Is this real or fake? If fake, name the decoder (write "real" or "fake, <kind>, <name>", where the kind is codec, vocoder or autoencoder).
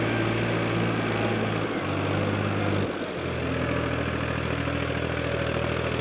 real